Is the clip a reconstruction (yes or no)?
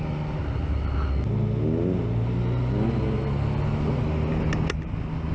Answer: no